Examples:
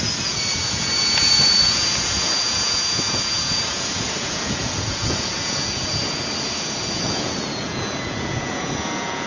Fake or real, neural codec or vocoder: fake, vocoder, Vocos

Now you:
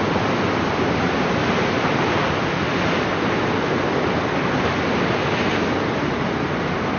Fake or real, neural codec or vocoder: real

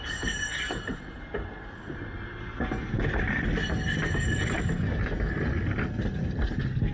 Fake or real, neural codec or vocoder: real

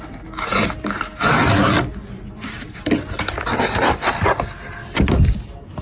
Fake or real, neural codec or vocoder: real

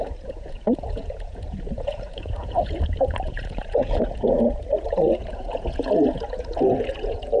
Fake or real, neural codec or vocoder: fake, vocoder, Vocos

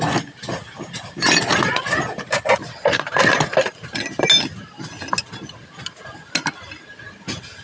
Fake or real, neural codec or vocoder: real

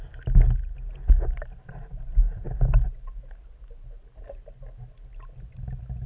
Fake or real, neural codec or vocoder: real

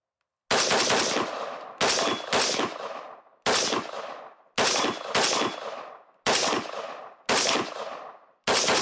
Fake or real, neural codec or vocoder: real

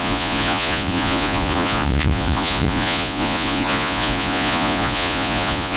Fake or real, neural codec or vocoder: fake, vocoder, Vocos